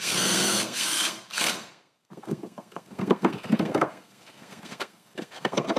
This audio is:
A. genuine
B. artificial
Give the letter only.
B